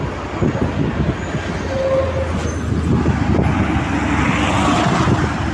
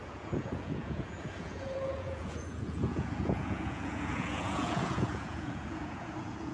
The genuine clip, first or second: first